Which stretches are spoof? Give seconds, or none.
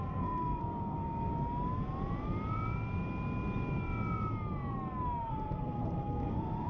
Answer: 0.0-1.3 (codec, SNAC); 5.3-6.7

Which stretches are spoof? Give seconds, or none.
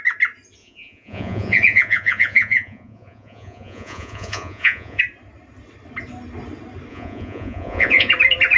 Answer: 0.6-5.0 (vocoder, Vocos); 6.9-8.1